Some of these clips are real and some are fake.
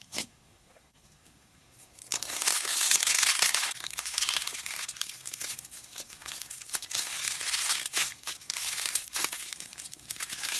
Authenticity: fake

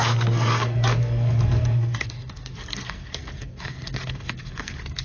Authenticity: fake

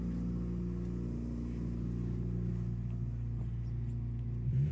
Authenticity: real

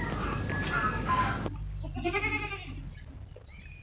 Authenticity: real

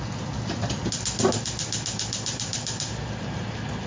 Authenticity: real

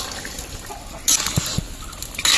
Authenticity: real